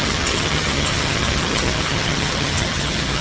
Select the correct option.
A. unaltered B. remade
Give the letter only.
B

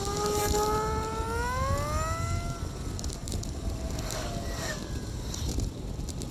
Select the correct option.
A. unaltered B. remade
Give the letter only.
A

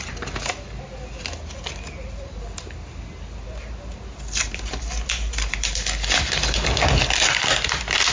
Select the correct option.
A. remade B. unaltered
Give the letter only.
B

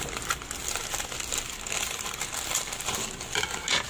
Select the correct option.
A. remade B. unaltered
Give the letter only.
B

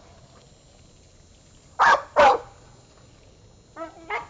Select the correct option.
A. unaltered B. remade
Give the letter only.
A